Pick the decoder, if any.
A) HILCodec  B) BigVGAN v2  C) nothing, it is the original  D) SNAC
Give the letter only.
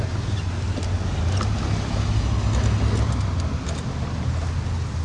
C